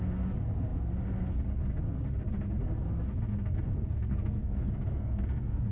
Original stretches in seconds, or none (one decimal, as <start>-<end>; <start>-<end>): 0.0-3.7